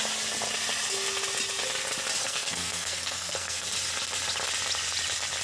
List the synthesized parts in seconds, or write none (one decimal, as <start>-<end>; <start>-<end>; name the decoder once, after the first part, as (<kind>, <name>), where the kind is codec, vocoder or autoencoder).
2.2-3.7 (codec, SNAC)